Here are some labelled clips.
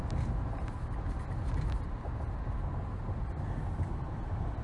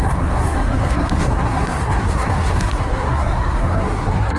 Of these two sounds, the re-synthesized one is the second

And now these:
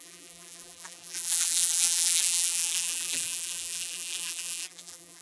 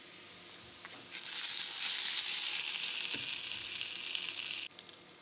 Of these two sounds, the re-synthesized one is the first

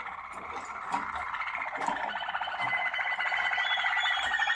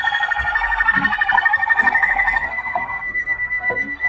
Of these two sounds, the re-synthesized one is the second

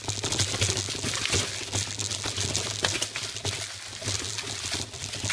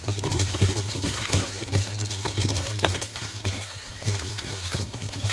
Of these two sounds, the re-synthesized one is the second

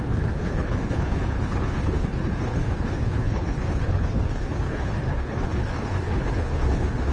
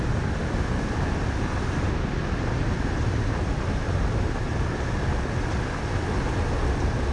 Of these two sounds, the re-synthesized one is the first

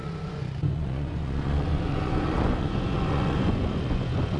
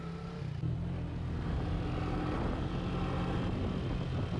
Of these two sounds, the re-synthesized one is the first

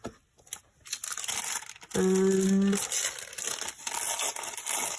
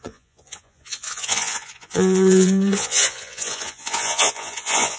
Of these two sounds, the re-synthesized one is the second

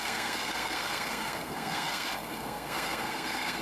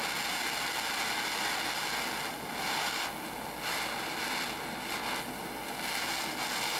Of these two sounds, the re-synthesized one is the first